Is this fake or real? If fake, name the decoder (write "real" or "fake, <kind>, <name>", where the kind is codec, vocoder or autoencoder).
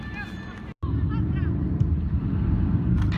real